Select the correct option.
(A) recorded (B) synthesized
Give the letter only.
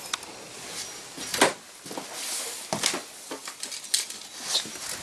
A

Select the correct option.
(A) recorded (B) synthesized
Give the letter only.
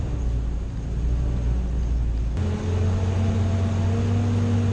A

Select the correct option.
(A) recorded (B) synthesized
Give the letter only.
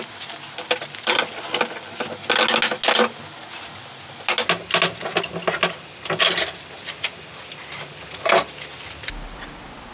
A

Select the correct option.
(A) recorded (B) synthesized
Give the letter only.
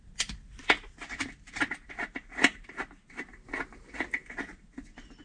A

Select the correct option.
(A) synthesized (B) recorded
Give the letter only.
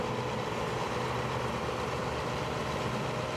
B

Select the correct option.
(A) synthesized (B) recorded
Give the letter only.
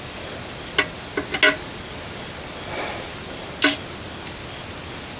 B